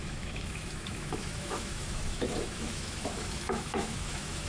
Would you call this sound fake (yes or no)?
yes